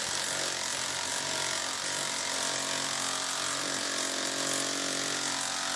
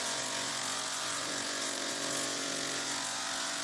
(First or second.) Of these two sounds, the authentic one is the first